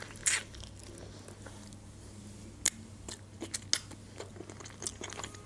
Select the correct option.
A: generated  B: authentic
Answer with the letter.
B